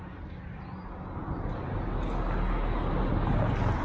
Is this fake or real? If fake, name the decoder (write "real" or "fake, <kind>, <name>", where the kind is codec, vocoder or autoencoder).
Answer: real